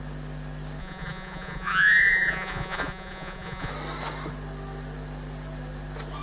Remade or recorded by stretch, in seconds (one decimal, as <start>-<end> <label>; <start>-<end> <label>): 0.0-0.8 recorded; 0.8-3.7 remade; 3.7-6.2 recorded